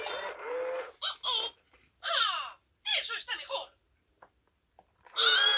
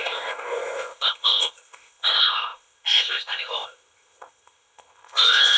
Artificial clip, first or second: second